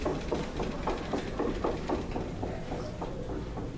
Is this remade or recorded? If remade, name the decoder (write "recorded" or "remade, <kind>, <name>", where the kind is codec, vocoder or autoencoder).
recorded